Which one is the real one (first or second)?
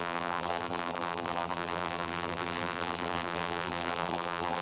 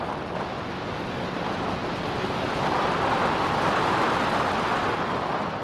second